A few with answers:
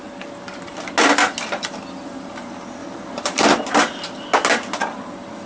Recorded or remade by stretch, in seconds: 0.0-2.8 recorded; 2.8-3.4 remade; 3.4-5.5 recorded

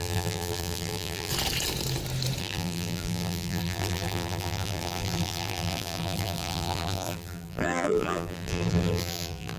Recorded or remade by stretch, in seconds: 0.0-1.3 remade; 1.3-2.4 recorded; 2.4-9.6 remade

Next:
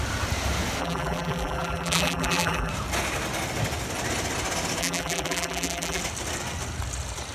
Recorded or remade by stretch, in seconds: 0.0-0.8 recorded; 0.8-2.7 remade; 2.7-4.8 recorded; 4.8-6.0 remade; 6.0-7.3 recorded

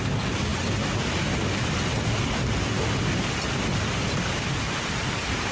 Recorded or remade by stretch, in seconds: 0.0-5.5 recorded

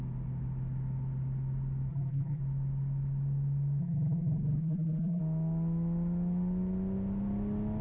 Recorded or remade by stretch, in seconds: 0.0-1.9 recorded; 1.9-2.4 remade; 2.4-3.8 recorded; 3.8-5.2 remade; 5.2-7.8 recorded